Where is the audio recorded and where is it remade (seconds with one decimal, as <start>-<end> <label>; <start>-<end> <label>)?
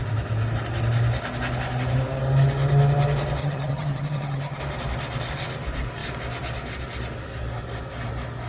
0.0-3.4 recorded; 3.4-4.6 remade; 4.6-8.5 recorded